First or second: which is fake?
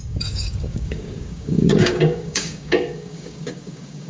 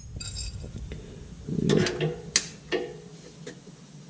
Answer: first